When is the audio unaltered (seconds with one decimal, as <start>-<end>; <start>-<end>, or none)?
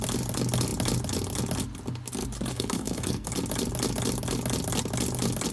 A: 0.0-2.5; 3.3-5.5